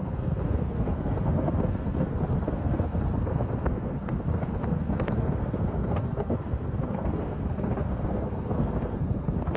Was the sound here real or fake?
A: fake